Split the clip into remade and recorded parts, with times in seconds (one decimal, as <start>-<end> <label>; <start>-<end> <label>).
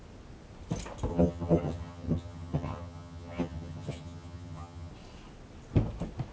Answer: 0.0-1.1 recorded; 1.1-4.9 remade; 4.9-6.3 recorded